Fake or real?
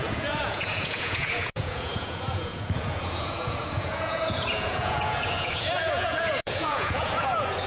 fake